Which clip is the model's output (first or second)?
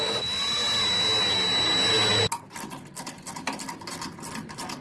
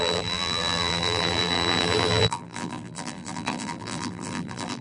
second